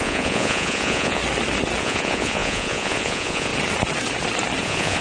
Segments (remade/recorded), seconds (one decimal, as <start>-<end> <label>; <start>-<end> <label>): 0.0-1.2 remade; 1.2-1.8 recorded; 1.8-3.5 remade; 3.5-4.6 recorded; 4.6-5.0 remade